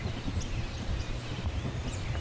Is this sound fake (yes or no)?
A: yes